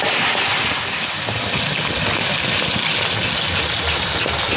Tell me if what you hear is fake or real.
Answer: real